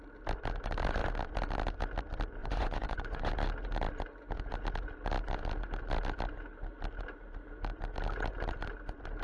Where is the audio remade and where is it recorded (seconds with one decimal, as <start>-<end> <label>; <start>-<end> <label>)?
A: 0.0-2.4 recorded; 2.4-3.3 remade; 3.3-9.2 recorded